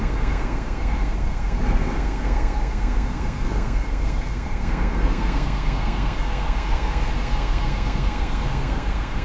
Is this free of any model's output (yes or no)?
no